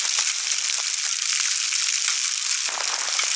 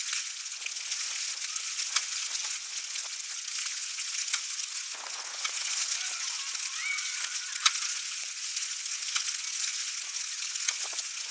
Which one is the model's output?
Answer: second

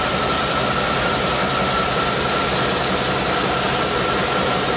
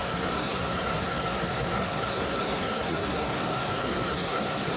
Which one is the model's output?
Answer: second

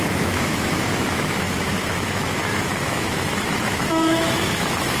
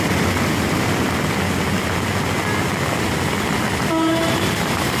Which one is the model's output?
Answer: first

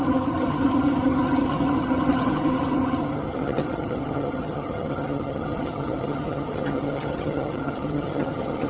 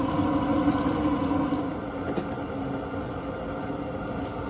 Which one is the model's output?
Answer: first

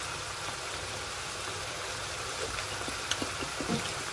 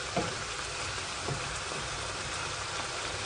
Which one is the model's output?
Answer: second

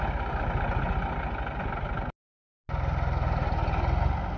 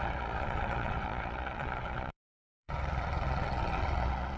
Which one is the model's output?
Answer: second